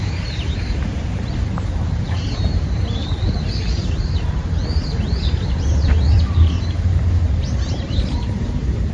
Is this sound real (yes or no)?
no